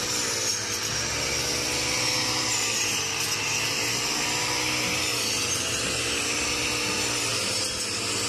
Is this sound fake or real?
real